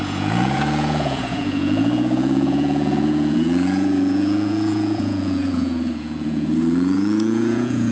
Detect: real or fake fake